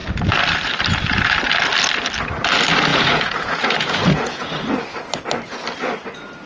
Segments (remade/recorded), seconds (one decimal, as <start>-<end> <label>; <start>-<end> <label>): 0.0-2.9 recorded; 2.9-4.5 remade; 4.5-6.5 recorded